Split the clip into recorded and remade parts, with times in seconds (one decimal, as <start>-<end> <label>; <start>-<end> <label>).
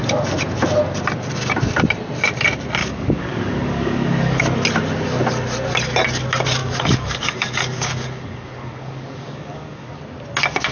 0.0-2.8 recorded; 2.8-4.4 remade; 4.4-6.6 recorded; 6.6-10.0 remade; 10.0-10.7 recorded